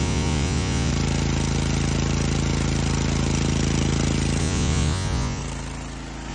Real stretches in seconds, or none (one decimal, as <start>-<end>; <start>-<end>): 0.9-4.4; 5.4-6.3